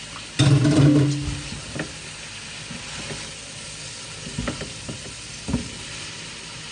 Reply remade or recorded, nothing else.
recorded